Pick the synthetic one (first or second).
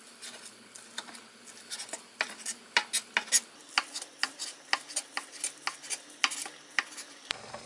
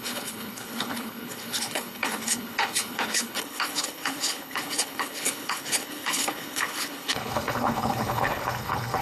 second